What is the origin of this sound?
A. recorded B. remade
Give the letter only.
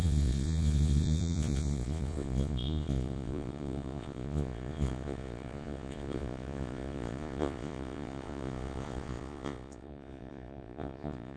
B